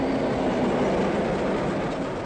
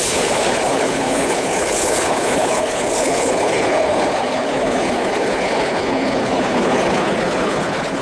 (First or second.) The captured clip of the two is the first